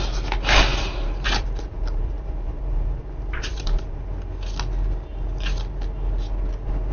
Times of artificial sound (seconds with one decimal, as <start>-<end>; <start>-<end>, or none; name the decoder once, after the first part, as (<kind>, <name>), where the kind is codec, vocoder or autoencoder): 0.7-4.0 (vocoder, BigVGAN v2)